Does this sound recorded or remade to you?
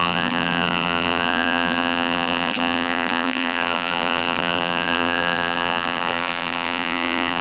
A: remade